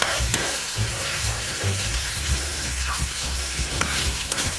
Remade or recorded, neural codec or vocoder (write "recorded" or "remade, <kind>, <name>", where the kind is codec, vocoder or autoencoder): remade, codec, SNAC